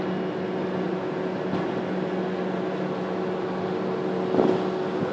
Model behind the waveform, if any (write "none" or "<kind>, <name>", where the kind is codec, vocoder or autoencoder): none